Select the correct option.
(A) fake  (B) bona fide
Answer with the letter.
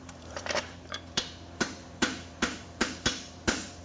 A